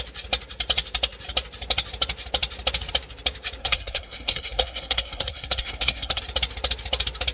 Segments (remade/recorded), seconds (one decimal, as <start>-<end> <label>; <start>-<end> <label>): 0.0-3.6 recorded; 3.6-6.2 remade; 6.2-7.3 recorded

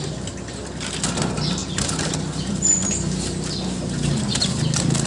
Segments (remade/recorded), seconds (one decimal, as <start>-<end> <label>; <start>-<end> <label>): 0.0-5.1 recorded